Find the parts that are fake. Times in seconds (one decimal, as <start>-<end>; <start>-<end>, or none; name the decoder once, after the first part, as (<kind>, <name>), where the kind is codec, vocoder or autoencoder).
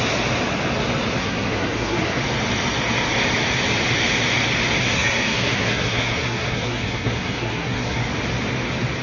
1.2-2.2 (codec, SNAC); 4.8-8.0